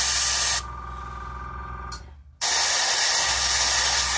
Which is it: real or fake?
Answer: real